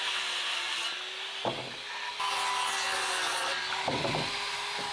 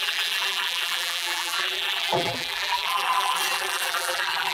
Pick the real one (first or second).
first